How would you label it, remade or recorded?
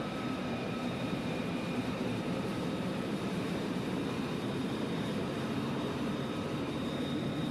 remade